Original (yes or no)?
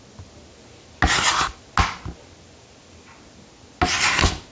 yes